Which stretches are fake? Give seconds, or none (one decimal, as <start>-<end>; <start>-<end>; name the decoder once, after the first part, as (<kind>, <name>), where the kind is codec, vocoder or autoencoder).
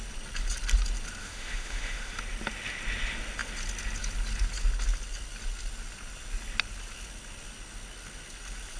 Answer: 1.2-2.2 (autoencoder, DAC-VAE)